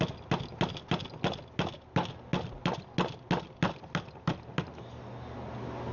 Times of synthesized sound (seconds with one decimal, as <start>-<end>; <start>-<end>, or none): none